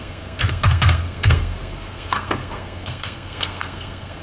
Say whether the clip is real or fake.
fake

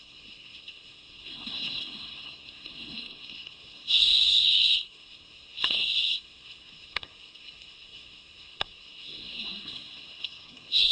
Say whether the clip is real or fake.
fake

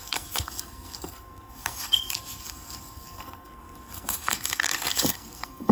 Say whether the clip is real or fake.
fake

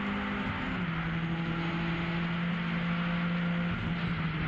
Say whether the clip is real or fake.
real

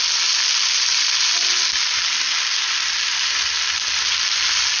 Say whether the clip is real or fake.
real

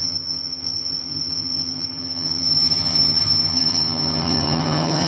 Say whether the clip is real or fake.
fake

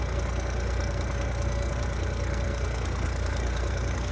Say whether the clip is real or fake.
fake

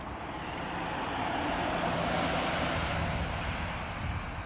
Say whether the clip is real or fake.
real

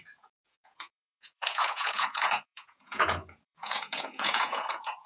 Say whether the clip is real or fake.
fake